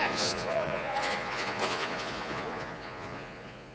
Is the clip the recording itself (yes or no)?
no